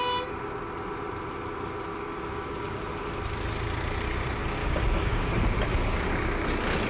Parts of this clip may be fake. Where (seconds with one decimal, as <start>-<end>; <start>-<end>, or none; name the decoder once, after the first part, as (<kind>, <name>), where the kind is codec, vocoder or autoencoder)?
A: 1.9-2.8 (codec, DAC); 4.6-5.3